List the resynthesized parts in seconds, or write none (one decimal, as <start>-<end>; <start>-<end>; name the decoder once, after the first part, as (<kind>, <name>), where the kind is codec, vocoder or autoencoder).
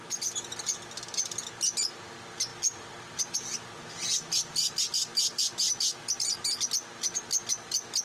none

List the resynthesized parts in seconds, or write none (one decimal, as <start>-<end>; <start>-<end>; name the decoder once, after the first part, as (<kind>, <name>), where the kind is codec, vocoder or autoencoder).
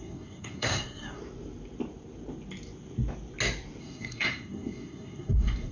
0.0-1.2 (codec, SNAC); 3.8-5.7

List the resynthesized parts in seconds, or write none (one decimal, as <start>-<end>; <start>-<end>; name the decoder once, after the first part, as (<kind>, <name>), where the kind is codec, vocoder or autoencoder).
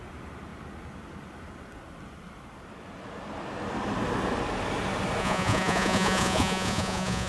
5.2-7.3 (vocoder, Vocos)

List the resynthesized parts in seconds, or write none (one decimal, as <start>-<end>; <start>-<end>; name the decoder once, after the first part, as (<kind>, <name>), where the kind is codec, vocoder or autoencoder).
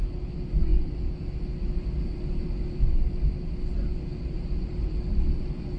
none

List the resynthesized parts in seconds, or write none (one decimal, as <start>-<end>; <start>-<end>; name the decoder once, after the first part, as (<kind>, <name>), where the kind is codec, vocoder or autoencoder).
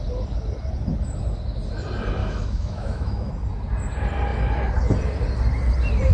2.2-3.3 (autoencoder, DAC-VAE)